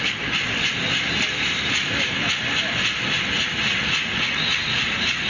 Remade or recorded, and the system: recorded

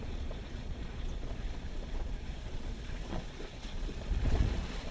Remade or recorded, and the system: remade, vocoder, Vocos